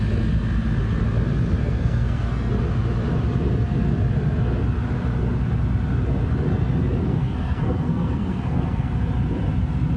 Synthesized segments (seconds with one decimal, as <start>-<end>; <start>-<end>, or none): 1.6-2.5; 7.0-8.9